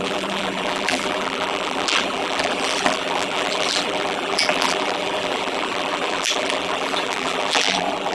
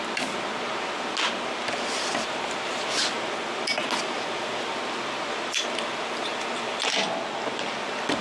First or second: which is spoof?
first